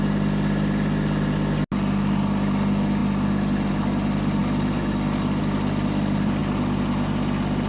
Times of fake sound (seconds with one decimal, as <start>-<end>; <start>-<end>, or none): none